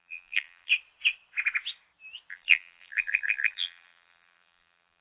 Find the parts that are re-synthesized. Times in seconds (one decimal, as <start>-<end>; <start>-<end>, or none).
0.0-0.7; 2.3-5.0